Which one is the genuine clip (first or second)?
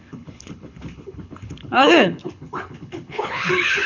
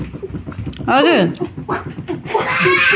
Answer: second